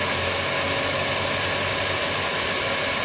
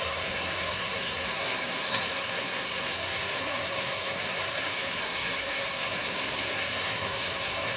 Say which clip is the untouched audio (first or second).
first